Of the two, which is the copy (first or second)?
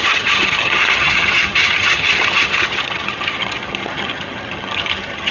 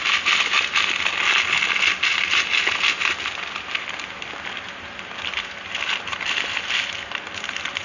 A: first